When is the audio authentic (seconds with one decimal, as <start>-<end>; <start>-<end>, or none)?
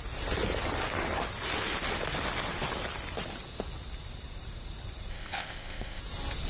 0.0-5.1; 6.0-6.5